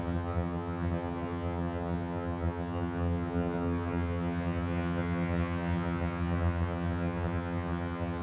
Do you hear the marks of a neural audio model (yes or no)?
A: yes